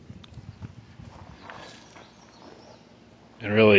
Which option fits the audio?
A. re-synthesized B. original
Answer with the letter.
B